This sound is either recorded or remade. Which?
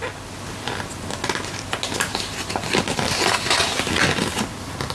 recorded